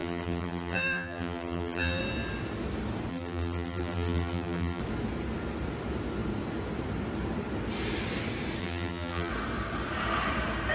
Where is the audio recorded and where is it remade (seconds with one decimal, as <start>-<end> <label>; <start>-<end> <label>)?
0.0-2.0 remade; 2.0-3.1 recorded; 3.1-4.8 remade; 4.8-8.6 recorded; 8.6-9.3 remade; 9.3-10.7 recorded